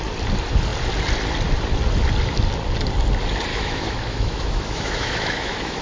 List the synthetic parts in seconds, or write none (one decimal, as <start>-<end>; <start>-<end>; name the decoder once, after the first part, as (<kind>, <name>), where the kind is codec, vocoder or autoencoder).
3.5-5.8 (autoencoder, DAC-VAE)